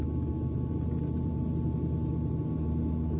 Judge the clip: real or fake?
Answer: real